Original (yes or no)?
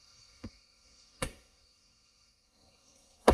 no